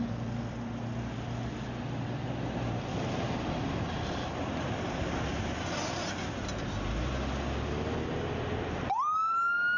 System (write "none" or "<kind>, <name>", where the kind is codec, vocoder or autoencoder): none